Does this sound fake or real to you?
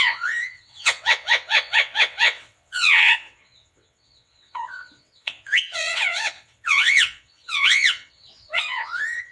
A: fake